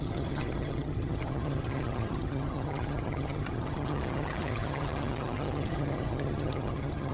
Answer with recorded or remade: remade